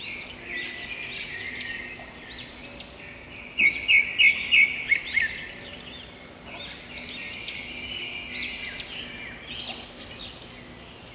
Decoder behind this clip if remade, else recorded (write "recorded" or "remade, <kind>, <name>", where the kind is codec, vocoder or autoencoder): recorded